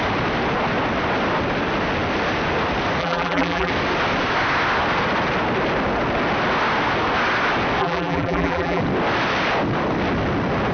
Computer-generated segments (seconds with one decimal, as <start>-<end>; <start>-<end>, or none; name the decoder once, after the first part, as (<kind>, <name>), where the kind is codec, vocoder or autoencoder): 3.0-3.7 (vocoder, BigVGAN v2); 7.8-8.8